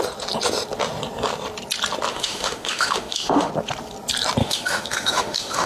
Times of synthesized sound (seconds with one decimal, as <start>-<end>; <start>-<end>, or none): 2.1-3.5; 4.4-5.7